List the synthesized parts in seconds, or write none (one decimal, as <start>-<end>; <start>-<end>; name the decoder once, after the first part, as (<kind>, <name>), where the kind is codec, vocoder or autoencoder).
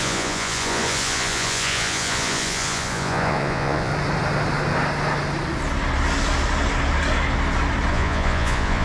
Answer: 0.0-3.9 (vocoder, Vocos); 7.9-8.8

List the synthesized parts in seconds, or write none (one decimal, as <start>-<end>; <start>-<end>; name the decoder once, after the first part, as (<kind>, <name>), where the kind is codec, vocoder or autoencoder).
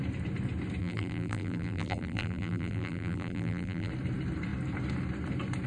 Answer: 0.8-3.9 (vocoder, BigVGAN v2)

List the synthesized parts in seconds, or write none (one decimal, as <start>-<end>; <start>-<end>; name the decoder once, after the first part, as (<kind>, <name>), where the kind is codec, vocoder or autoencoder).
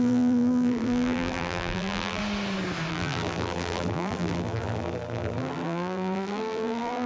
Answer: 0.0-2.2 (vocoder, BigVGAN v2); 2.9-7.1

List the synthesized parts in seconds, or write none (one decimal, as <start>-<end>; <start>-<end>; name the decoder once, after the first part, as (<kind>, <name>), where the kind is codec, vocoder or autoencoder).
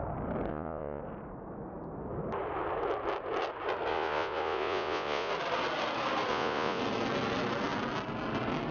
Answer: 0.5-1.0 (vocoder, Vocos); 3.9-5.3; 6.3-6.8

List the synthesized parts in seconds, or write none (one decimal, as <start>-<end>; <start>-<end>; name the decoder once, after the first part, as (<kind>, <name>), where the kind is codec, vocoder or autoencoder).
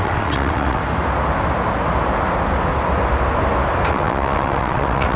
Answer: 0.0-0.8 (vocoder, WaveNeXt); 3.9-5.2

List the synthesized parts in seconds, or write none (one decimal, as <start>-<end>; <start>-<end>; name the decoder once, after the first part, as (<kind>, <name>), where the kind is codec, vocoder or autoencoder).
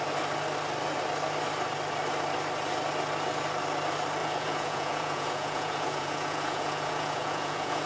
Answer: 4.2-7.9 (vocoder, Vocos)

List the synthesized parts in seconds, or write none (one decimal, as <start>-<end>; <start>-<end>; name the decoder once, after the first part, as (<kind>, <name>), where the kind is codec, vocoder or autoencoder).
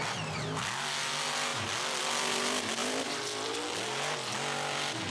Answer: 2.8-3.6 (vocoder, BigVGAN v2)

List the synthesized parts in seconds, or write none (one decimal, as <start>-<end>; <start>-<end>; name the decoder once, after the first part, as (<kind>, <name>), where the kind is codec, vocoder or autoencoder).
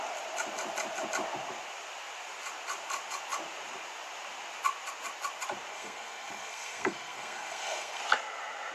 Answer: 5.7-8.0 (codec, SNAC)